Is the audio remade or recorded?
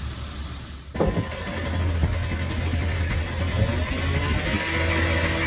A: recorded